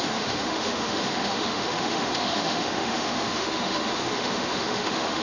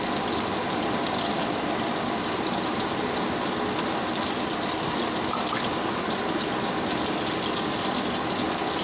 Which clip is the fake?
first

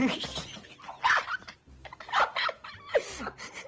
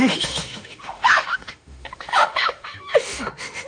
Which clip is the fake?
second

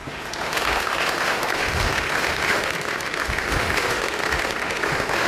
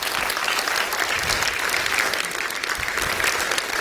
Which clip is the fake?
first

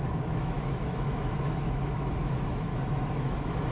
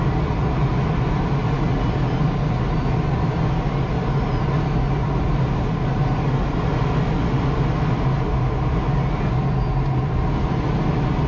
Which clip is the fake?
first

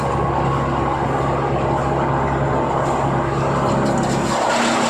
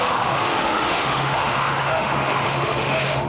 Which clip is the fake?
second